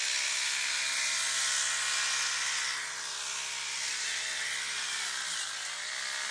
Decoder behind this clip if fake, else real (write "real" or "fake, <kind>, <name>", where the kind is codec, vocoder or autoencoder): real